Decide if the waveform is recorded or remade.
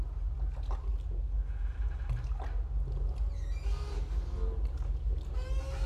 recorded